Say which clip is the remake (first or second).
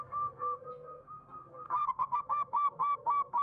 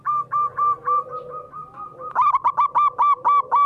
first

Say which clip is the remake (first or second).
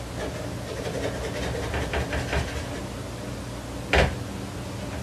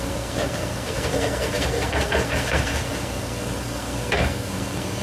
second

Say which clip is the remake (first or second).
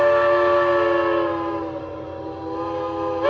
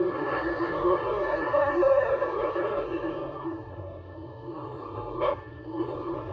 second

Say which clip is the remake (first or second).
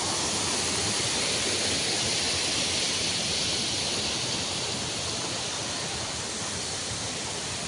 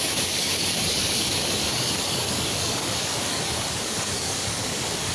second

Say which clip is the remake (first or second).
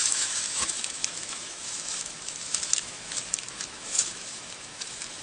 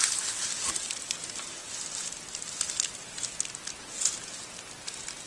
first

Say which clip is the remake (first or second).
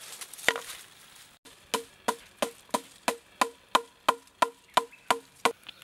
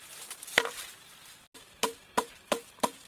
second